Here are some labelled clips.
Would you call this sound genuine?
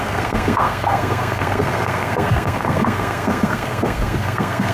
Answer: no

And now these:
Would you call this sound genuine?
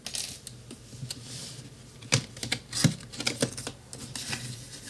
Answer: yes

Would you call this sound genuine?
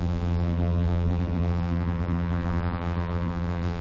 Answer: no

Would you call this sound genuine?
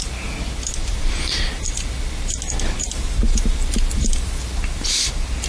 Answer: yes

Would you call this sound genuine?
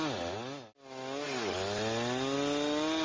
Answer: yes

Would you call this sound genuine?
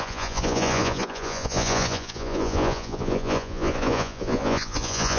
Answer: no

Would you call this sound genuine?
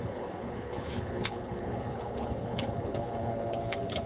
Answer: no